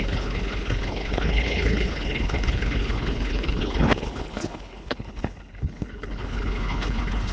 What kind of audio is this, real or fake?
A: fake